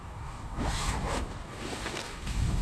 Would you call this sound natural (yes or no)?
no